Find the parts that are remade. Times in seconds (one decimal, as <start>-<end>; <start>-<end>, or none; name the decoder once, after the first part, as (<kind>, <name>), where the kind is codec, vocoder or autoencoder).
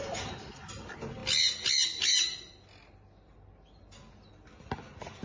none